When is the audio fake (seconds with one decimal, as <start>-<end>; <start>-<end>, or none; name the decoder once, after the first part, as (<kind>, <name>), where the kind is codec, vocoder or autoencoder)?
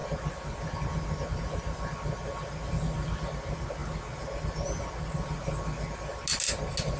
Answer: none